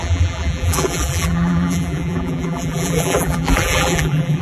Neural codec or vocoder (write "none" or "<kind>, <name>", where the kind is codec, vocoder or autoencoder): vocoder, BigVGAN v2